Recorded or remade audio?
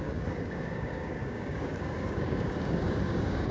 remade